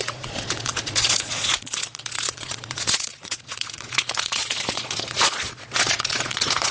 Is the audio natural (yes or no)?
no